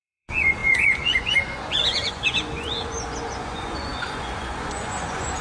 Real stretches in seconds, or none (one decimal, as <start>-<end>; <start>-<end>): none